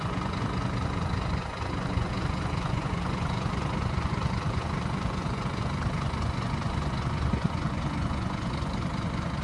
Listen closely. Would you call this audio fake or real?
fake